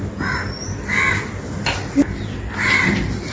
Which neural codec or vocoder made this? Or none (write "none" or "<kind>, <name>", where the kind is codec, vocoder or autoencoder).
none